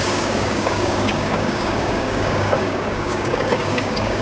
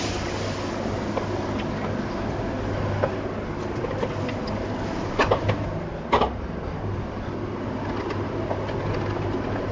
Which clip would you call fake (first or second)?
first